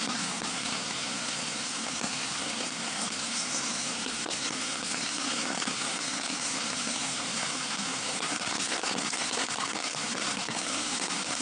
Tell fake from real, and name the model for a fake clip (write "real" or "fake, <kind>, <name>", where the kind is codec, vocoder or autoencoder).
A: fake, codec, SNAC